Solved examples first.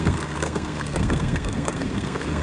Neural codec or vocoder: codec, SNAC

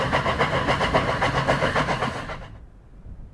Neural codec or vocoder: none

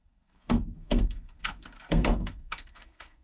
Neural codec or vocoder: codec, SNAC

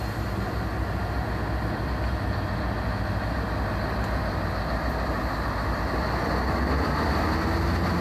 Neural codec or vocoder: none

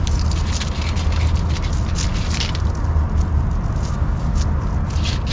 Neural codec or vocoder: none